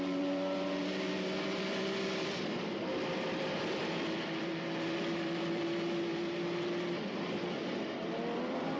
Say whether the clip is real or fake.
fake